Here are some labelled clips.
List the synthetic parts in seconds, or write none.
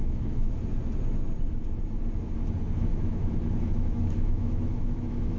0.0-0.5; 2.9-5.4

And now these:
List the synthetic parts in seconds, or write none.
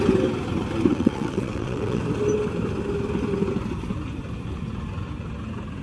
0.9-2.0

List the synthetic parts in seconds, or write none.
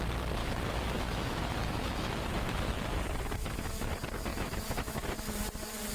0.4-3.9; 4.3-5.3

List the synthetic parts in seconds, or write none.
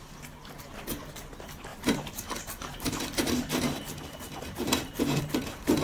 1.7-5.2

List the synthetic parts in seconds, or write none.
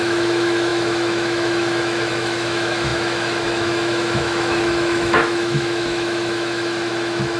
0.0-7.4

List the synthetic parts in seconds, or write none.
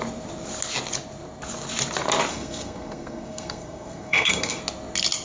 2.3-4.6